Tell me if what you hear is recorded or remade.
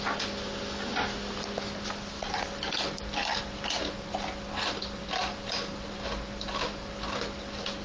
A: recorded